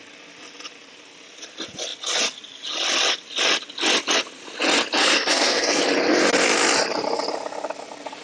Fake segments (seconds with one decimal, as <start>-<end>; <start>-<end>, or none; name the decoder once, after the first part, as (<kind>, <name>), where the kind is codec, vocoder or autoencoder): 5.0-5.8 (codec, SNAC)